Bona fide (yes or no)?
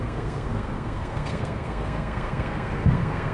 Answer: no